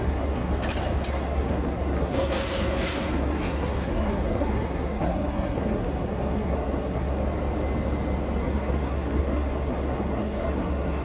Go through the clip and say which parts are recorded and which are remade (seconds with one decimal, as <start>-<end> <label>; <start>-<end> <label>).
0.0-0.5 remade; 0.5-1.1 recorded; 1.1-7.2 remade; 7.2-8.4 recorded; 8.4-11.0 remade